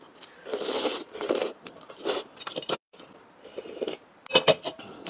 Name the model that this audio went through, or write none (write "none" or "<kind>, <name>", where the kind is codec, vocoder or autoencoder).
none